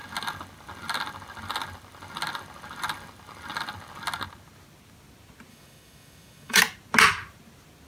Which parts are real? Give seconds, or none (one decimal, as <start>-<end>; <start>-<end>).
0.0-5.5; 6.6-7.9